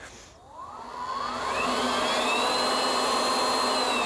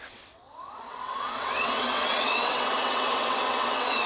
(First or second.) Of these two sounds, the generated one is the second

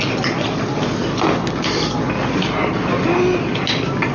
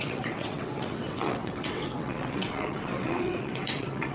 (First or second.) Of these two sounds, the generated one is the second